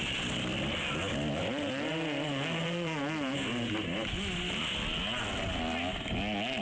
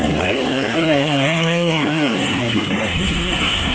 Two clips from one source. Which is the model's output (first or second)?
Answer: second